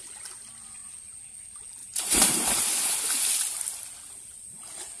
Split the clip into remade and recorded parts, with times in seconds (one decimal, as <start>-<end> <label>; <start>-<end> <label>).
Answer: 0.0-0.8 recorded; 0.8-1.3 remade; 1.3-1.8 recorded; 1.8-3.0 remade; 3.0-5.0 recorded